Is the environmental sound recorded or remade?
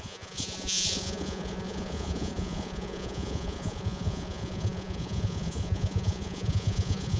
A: remade